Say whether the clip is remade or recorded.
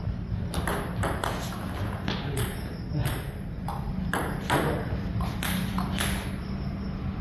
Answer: recorded